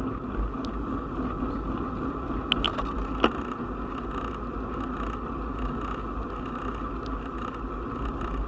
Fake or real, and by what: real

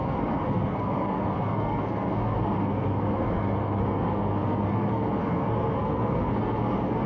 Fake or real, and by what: fake, codec, SNAC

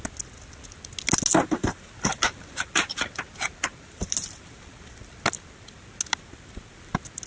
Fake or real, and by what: real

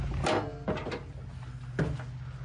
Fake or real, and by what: real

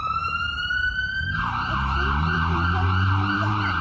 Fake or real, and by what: fake, vocoder, BigVGAN v2